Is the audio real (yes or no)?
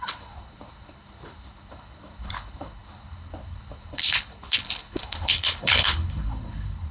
no